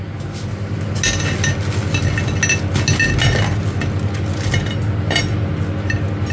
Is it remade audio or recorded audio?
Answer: recorded